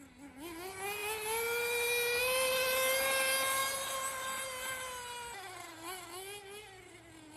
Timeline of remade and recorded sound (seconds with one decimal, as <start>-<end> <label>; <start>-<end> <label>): 0.0-7.4 recorded